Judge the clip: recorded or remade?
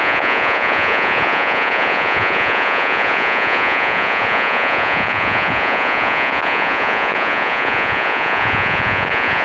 remade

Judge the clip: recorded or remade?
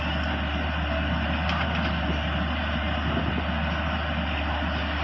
recorded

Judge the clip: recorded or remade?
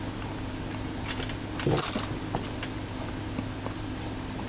recorded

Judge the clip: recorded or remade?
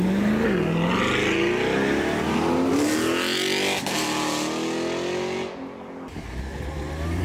recorded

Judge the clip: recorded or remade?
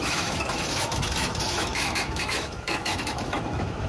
remade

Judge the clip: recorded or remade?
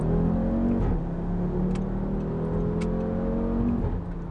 recorded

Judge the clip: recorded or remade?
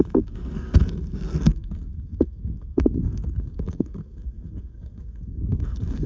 remade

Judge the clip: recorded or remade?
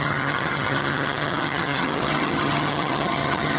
remade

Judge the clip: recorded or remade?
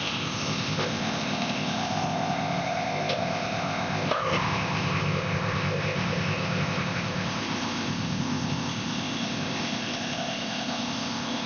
remade